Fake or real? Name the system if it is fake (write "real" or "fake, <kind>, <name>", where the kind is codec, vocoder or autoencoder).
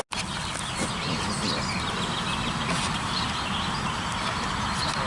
real